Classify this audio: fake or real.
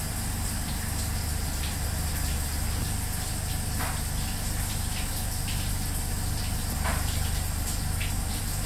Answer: real